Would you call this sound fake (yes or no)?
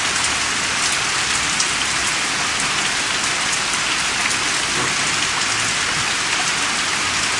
no